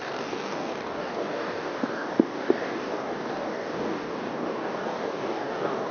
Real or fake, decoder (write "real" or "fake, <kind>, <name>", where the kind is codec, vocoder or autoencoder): fake, codec, DAC